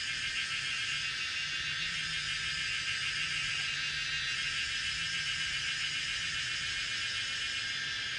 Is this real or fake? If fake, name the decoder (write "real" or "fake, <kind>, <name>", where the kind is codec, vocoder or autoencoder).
real